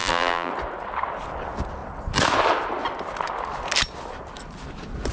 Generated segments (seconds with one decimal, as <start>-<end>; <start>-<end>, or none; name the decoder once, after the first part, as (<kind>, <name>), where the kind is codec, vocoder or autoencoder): 0.0-0.5 (vocoder, BigVGAN v2)